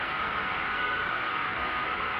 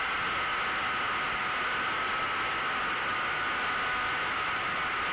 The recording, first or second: second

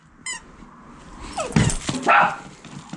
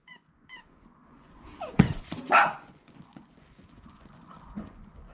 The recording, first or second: first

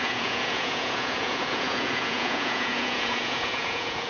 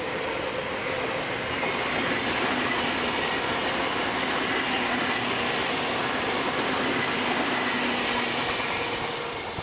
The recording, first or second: second